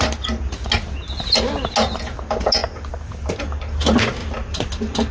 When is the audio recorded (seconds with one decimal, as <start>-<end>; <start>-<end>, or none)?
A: 0.0-4.2